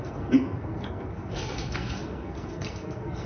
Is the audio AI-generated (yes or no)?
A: yes